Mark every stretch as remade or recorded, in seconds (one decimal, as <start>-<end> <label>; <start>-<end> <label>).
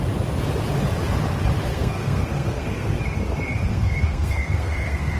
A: 0.0-1.7 recorded; 1.7-3.0 remade; 3.0-3.7 recorded; 3.7-5.2 remade